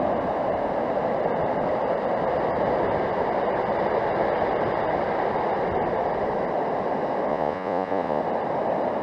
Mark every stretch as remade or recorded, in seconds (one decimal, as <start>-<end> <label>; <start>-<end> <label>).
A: 0.0-7.3 recorded; 7.3-8.2 remade; 8.2-9.0 recorded